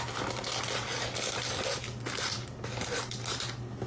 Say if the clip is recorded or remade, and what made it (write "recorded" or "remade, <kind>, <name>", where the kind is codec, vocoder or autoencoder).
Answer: recorded